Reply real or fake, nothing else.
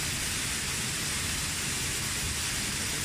real